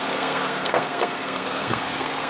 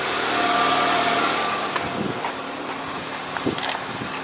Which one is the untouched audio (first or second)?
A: second